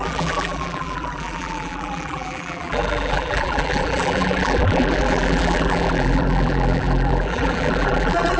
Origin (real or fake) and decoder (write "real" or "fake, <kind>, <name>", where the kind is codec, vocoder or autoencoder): fake, vocoder, BigVGAN v2